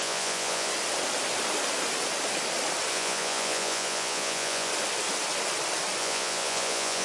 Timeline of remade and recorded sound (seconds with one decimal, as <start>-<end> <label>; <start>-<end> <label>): 0.0-0.7 remade; 0.7-2.9 recorded; 2.9-4.7 remade; 4.7-6.0 recorded; 6.0-7.0 remade